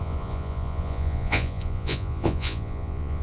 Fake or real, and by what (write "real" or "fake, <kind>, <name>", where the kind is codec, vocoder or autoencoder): fake, vocoder, Vocos